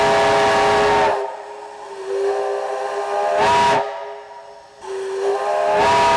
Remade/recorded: recorded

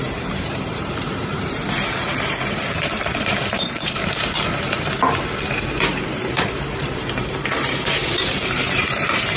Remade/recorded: remade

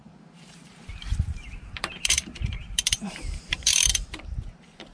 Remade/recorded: remade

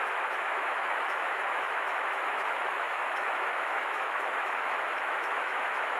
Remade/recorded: remade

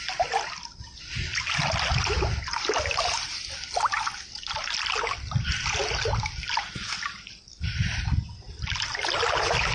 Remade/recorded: recorded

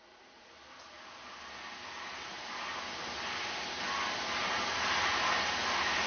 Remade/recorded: recorded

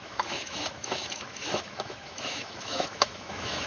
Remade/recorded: remade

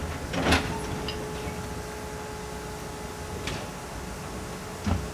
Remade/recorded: recorded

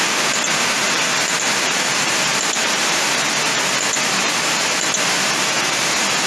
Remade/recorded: remade